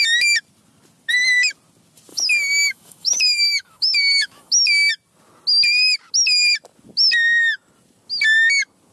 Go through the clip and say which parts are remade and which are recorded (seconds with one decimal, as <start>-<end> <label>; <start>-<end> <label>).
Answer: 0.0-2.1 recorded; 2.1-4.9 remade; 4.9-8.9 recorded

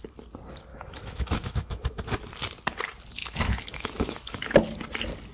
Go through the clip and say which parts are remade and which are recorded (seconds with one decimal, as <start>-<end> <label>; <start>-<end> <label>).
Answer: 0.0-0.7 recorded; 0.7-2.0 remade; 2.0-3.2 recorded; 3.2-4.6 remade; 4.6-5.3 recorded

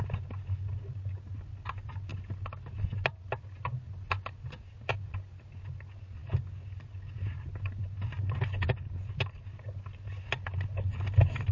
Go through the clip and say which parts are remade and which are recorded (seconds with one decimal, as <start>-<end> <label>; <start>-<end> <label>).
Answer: 0.0-11.5 recorded